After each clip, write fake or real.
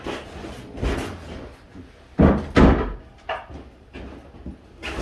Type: real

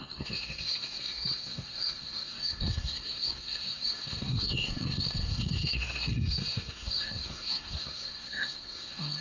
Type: fake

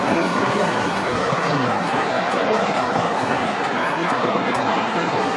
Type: fake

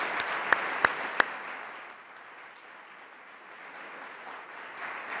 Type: real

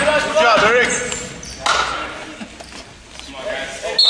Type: real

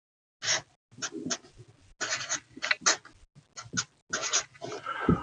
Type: real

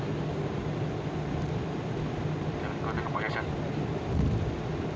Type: real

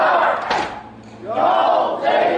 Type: real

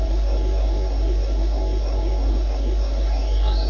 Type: fake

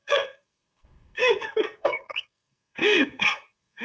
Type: fake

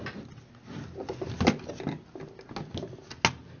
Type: real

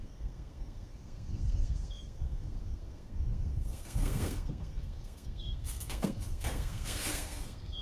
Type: fake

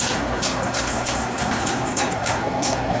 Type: fake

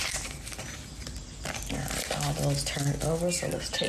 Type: real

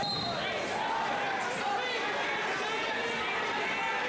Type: real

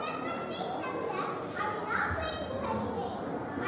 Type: real